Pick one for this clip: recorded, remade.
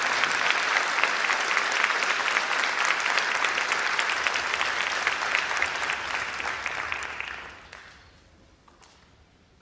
recorded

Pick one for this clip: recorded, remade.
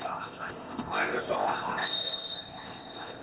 remade